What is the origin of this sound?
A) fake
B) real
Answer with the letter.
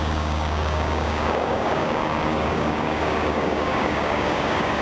A